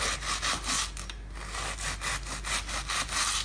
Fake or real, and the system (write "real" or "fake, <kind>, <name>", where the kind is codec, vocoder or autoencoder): real